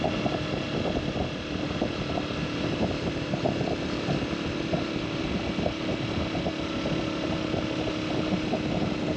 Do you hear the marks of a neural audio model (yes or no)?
no